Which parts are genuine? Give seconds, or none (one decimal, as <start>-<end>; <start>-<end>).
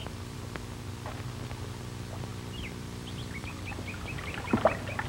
1.2-2.3; 4.2-5.1